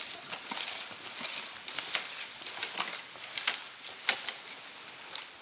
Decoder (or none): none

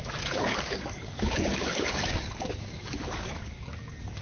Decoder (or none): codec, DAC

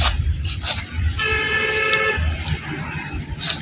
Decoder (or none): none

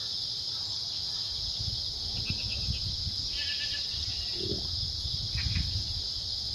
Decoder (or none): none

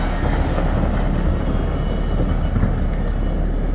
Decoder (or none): none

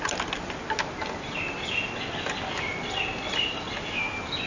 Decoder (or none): none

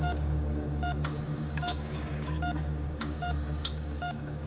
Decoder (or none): codec, DAC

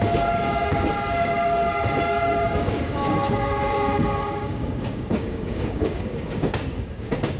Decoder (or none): codec, DAC